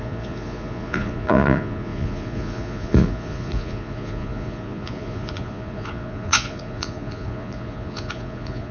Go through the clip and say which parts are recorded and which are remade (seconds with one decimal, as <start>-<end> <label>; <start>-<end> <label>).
0.0-8.7 remade